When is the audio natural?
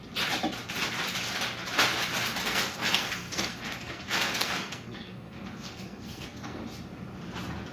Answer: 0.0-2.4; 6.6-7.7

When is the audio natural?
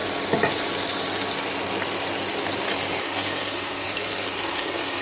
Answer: 0.0-3.0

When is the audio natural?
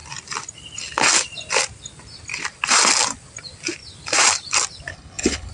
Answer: 0.0-4.9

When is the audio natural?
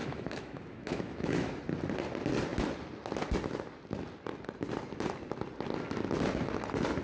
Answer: 1.6-7.0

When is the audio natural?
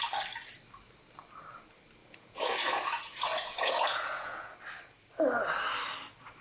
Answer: 0.0-2.0; 4.6-6.4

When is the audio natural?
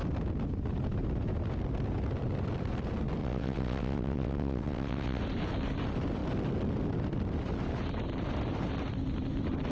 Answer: 0.0-3.2; 5.2-9.7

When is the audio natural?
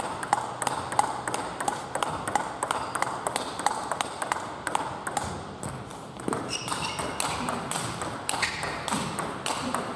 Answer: 0.0-5.9; 7.1-10.0